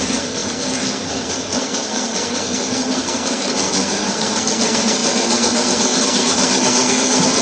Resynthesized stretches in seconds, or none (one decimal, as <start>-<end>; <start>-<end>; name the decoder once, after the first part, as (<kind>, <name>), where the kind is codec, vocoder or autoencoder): 0.0-7.4 (codec, SNAC)